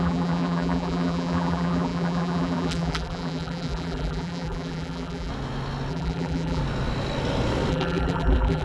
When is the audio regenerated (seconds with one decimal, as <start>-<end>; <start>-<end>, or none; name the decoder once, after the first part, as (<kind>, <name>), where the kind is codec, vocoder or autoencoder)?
0.0-5.3 (vocoder, BigVGAN v2); 5.9-6.6; 7.7-8.6